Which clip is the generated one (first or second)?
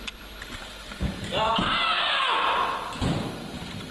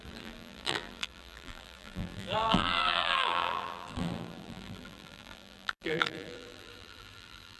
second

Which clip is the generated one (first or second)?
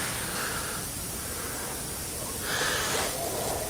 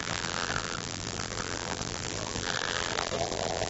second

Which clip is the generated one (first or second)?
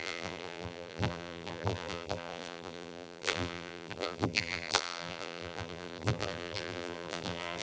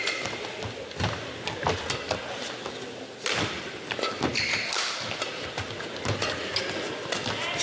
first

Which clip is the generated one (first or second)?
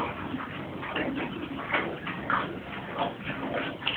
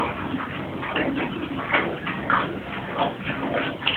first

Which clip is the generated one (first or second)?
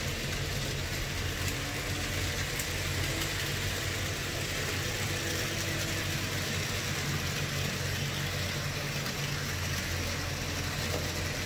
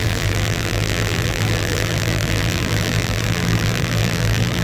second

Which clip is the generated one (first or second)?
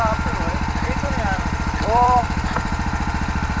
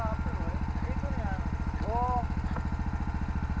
first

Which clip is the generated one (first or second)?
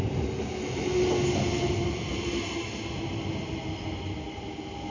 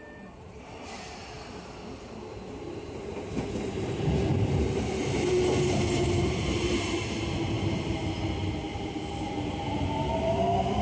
second